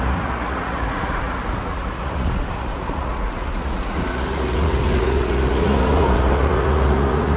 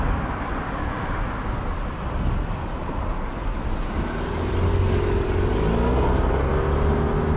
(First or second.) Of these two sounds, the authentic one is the second